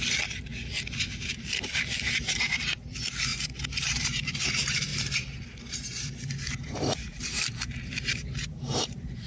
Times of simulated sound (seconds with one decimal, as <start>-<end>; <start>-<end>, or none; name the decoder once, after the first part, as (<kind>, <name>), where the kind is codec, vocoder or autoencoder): 0.0-0.5 (vocoder, BigVGAN v2); 1.3-4.9; 5.7-9.3